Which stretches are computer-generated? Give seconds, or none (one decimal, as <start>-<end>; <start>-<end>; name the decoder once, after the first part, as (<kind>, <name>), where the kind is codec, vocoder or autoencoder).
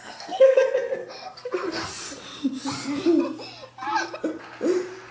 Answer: 0.0-1.8 (codec, SNAC)